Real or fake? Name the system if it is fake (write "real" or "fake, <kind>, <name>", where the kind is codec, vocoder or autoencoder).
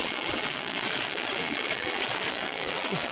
fake, vocoder, Vocos